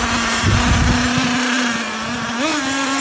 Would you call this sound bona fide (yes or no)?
yes